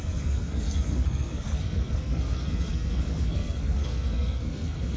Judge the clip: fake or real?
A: fake